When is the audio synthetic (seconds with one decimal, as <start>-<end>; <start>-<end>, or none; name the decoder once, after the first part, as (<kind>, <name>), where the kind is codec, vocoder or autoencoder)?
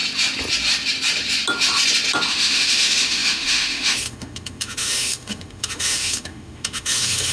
2.3-7.3 (autoencoder, DAC-VAE)